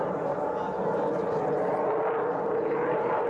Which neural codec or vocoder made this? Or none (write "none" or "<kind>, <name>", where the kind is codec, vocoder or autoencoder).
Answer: none